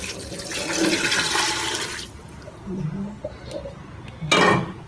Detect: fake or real real